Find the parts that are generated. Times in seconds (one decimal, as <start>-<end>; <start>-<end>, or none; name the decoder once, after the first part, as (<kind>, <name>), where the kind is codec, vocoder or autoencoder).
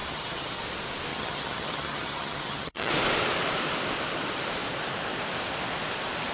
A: 0.0-0.6 (vocoder, HiFi-GAN); 1.1-2.9